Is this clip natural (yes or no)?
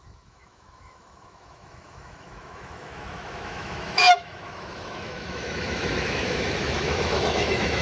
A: no